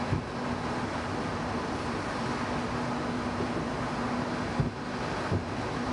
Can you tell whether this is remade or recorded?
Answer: recorded